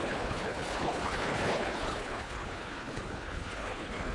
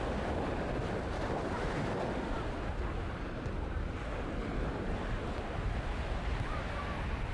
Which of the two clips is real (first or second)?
second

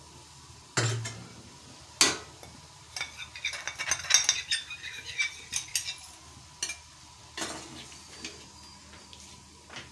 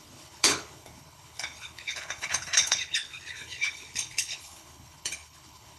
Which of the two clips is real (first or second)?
first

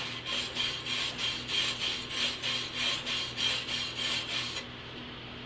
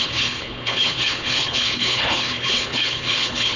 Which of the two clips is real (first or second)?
first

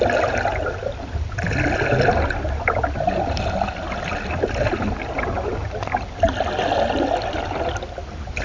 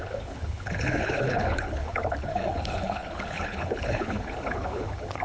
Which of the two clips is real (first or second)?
first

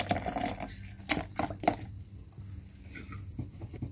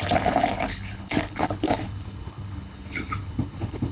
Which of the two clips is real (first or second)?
first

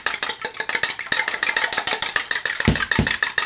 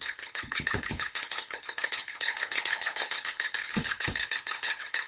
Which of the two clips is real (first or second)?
first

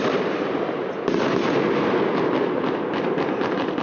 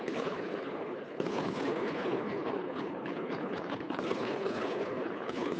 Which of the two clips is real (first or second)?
first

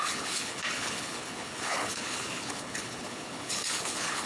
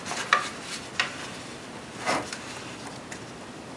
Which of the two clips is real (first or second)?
second